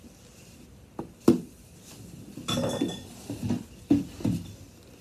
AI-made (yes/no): no